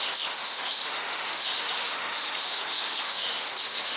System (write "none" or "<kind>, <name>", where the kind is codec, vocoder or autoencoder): autoencoder, DAC-VAE